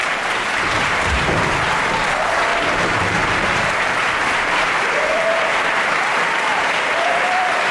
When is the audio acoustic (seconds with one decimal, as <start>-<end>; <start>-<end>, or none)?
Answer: 1.5-2.5; 6.0-6.5